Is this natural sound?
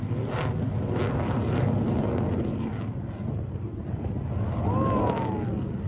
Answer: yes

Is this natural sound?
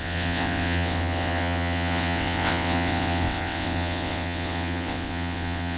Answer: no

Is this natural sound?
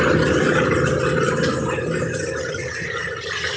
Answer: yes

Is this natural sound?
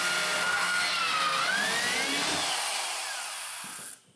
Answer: yes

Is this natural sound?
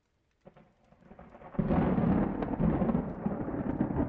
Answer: yes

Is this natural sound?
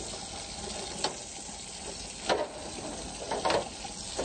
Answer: yes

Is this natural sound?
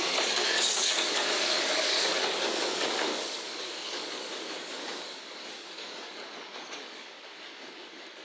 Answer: no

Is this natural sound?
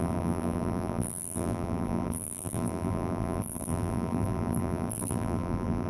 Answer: no